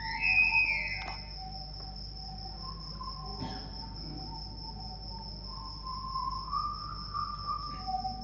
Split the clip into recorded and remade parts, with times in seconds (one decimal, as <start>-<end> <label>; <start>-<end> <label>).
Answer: 0.0-8.2 recorded